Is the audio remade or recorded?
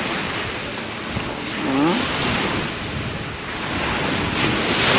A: recorded